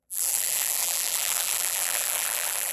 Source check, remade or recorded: remade